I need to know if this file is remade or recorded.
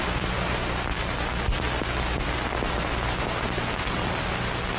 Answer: recorded